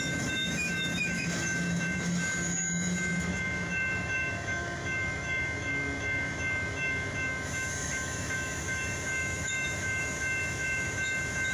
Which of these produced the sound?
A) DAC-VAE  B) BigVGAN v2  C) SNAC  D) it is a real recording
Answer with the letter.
A